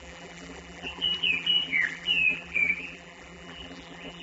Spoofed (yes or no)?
yes